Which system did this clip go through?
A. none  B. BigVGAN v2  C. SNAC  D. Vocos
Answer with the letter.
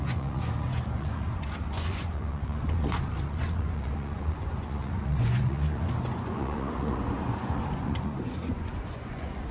D